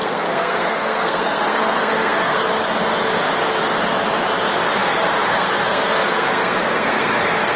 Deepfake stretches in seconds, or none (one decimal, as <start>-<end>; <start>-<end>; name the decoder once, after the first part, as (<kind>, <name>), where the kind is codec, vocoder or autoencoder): 0.0-2.4 (codec, SNAC); 4.8-7.6